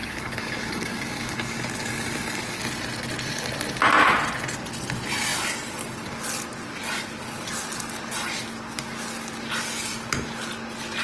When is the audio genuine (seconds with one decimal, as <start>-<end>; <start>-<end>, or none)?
2.6-11.0